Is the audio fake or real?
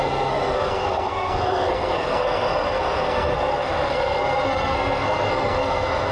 fake